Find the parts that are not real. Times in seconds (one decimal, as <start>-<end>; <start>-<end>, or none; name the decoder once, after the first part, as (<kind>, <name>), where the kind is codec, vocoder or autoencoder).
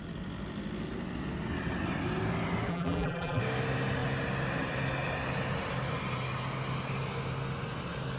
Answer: 2.7-3.4 (vocoder, BigVGAN v2)